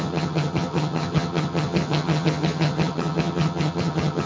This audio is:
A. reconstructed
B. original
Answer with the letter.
A